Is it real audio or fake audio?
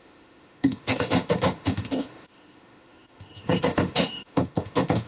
fake